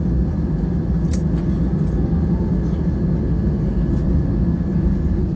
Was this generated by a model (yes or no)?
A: no